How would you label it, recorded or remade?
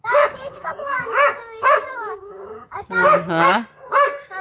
remade